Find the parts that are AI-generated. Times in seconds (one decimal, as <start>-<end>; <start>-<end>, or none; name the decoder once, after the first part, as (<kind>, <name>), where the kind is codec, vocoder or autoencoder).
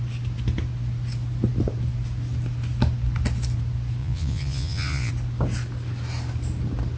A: 4.0-5.1 (vocoder, Vocos)